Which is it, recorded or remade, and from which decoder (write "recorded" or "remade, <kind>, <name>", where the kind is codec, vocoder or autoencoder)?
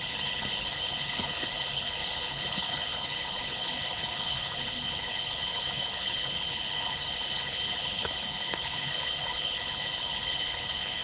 remade, codec, HILCodec